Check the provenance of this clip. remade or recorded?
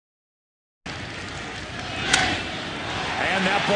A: recorded